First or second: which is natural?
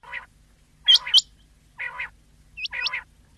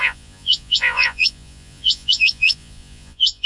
first